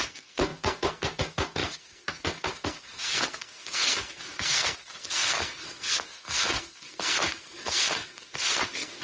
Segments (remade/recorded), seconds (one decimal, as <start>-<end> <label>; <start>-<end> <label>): 0.0-9.0 remade